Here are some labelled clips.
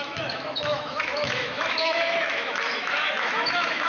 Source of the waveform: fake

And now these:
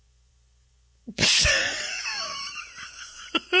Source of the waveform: fake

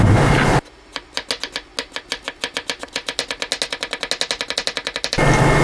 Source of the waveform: real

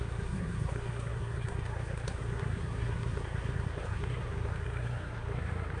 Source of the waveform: fake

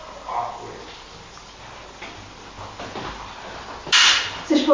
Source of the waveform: real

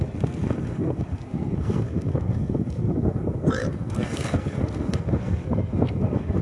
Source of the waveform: fake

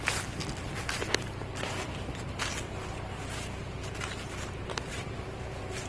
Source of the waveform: real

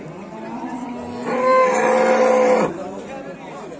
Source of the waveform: real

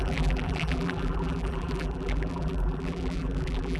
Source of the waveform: fake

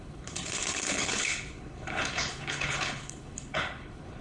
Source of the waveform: fake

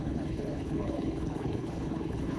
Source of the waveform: fake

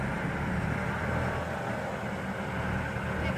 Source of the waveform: real